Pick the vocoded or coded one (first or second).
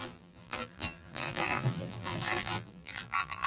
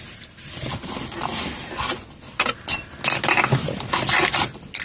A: first